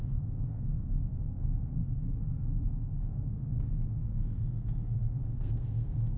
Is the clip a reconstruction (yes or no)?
yes